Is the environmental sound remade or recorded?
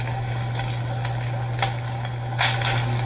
recorded